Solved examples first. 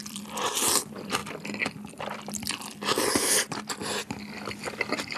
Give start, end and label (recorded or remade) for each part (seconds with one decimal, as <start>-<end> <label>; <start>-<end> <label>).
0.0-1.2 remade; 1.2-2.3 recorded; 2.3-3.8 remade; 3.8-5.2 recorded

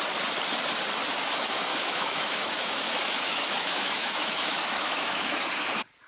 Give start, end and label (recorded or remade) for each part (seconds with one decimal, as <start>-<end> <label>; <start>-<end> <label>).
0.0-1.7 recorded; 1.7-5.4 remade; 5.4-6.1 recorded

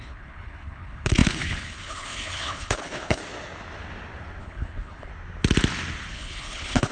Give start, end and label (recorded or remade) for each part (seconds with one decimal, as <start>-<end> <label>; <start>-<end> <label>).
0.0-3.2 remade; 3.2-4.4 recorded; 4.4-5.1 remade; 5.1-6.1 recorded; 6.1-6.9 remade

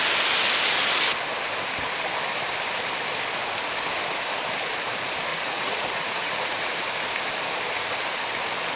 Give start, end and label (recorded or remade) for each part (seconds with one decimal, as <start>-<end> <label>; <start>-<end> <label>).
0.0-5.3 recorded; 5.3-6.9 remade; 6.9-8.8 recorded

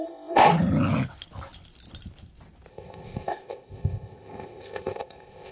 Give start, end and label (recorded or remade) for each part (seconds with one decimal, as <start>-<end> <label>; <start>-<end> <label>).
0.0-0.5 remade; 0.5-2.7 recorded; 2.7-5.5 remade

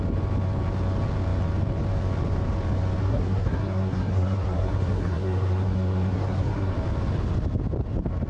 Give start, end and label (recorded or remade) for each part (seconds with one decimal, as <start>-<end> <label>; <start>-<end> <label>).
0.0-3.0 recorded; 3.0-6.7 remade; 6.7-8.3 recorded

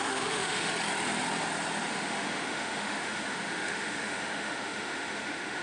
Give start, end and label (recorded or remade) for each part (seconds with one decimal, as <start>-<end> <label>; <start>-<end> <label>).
0.0-0.7 remade; 0.7-1.9 recorded; 1.9-5.6 remade

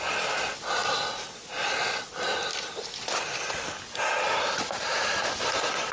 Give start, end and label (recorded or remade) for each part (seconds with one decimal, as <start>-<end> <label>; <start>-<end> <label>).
0.0-5.9 recorded